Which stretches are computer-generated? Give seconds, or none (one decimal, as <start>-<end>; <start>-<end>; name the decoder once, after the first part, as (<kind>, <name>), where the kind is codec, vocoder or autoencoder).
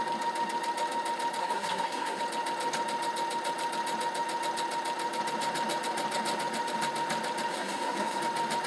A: 1.4-2.2 (codec, SNAC); 7.5-8.2